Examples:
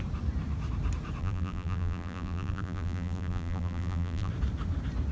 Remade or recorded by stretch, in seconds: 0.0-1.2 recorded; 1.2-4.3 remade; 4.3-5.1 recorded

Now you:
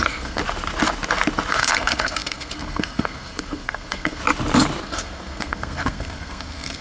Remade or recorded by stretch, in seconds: 0.0-0.4 remade; 0.4-1.5 recorded; 1.5-4.2 remade; 4.2-4.8 recorded; 4.8-6.8 remade

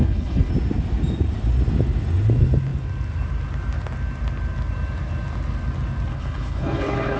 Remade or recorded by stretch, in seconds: 0.0-0.5 remade; 0.5-6.1 recorded; 6.1-7.2 remade

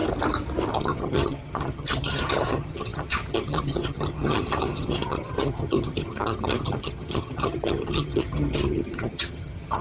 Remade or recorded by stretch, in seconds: 0.0-0.7 recorded; 0.7-9.8 remade